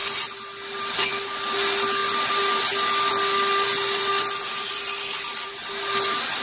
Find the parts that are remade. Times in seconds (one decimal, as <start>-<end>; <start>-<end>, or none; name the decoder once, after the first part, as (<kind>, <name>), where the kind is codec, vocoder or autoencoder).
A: none